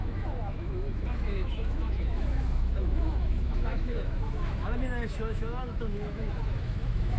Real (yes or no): no